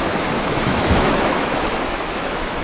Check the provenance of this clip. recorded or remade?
remade